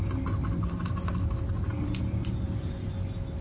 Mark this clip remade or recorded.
recorded